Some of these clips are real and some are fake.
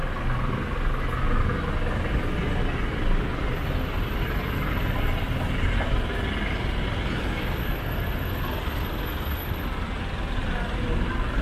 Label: real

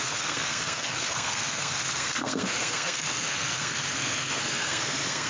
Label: fake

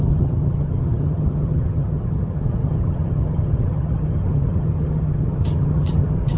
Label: fake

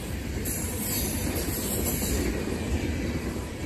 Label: fake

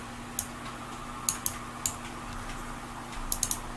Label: real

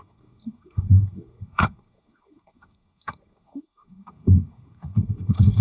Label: fake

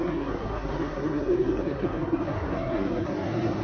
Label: fake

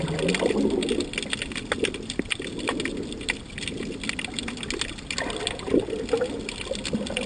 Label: real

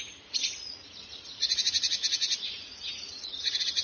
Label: fake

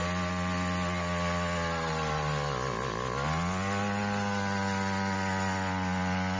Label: real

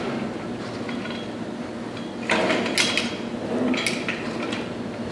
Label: real